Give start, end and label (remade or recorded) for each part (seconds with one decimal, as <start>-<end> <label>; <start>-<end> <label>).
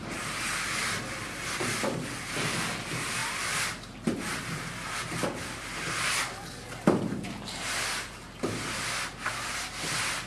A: 0.0-10.3 recorded